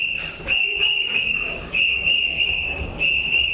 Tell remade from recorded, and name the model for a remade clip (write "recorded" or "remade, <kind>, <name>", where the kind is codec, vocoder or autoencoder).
remade, codec, DAC